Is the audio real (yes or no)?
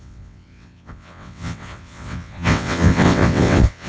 no